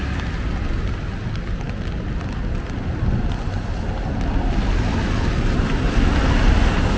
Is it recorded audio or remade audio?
recorded